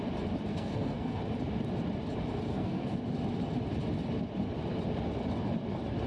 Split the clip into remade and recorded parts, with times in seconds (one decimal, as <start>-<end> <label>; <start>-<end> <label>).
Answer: 0.0-0.5 recorded; 0.5-1.2 remade; 1.2-2.5 recorded; 2.5-3.0 remade; 3.0-6.1 recorded